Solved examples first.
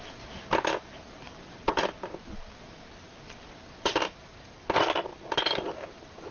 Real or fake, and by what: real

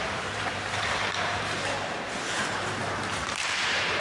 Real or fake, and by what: fake, vocoder, BigVGAN v2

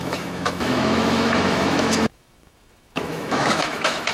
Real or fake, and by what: fake, autoencoder, DAC-VAE